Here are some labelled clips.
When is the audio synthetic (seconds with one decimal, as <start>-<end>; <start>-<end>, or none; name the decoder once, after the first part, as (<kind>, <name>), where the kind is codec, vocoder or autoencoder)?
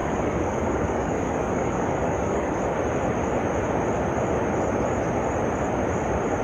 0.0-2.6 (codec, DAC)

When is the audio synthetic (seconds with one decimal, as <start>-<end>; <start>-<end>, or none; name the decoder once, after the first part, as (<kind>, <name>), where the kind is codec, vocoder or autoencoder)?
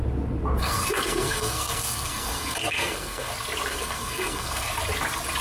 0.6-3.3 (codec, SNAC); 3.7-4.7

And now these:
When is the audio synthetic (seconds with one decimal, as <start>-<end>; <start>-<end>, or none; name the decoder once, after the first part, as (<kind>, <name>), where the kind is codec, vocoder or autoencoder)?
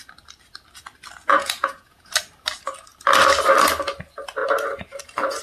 1.3-2.1 (vocoder, Vocos)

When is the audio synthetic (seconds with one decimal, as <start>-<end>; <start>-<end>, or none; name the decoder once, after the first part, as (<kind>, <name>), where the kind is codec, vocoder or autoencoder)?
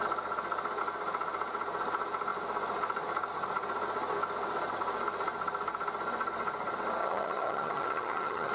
7.0-8.5 (vocoder, HiFi-GAN)